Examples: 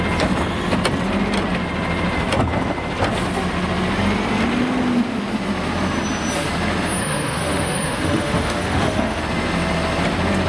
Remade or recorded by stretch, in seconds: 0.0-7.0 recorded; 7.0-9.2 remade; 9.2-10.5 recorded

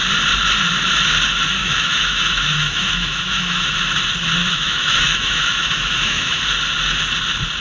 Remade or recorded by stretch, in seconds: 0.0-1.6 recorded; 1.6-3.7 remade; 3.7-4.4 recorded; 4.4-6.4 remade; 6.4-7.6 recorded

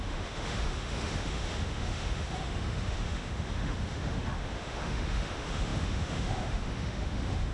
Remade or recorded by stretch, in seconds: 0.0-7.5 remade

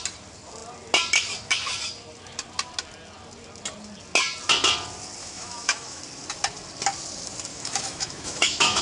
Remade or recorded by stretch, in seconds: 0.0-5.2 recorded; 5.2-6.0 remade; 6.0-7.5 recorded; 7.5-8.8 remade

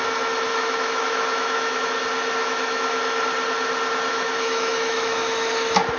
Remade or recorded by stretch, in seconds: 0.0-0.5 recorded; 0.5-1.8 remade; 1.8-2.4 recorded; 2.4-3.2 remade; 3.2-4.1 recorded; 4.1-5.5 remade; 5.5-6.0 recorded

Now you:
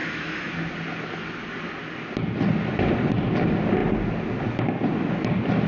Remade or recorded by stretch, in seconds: 0.0-0.5 remade; 0.5-5.7 recorded

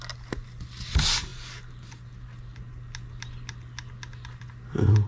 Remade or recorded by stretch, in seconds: 0.0-5.1 recorded